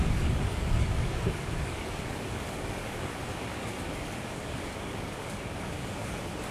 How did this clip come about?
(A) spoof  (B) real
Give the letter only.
A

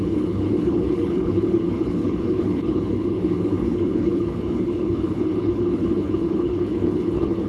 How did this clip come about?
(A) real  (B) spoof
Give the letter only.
B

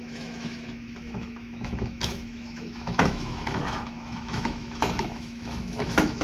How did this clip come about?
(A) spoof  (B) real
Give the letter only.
A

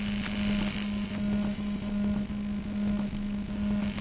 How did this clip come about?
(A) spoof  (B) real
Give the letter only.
B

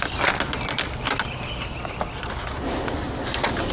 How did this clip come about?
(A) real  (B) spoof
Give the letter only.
A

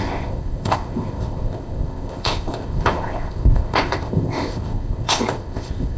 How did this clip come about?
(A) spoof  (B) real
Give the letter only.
A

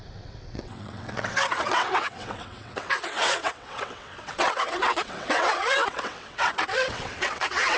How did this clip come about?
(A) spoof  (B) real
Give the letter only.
A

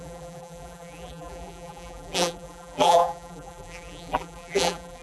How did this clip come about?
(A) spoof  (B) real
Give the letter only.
A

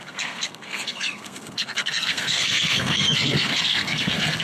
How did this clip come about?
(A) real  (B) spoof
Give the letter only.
B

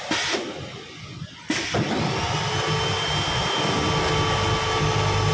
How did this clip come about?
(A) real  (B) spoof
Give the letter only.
A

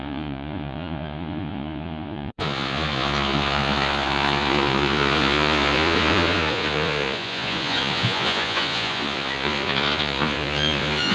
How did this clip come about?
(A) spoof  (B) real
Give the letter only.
A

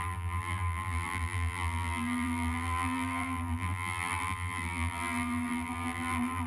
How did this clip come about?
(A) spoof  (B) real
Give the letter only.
A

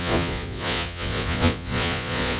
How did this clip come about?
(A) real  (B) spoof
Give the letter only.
B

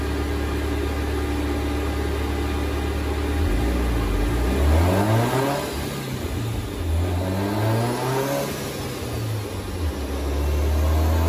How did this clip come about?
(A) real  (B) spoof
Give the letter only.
A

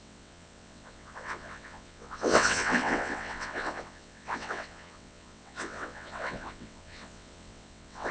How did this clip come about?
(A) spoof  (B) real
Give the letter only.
A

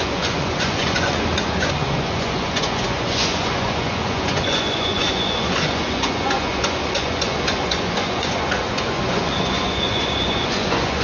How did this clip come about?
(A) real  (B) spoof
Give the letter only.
B